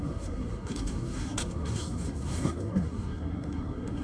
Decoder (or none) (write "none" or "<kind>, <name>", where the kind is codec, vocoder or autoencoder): codec, SNAC